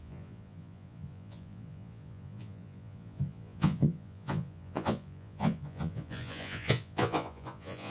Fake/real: fake